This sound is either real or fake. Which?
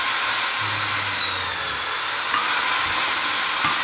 real